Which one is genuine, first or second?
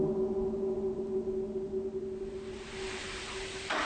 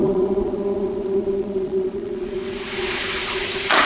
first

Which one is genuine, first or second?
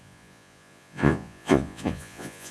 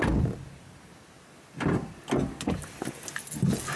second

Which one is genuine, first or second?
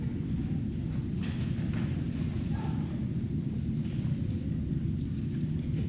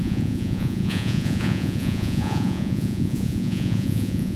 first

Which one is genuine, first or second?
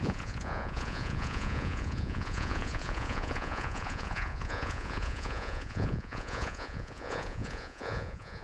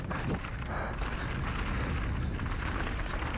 second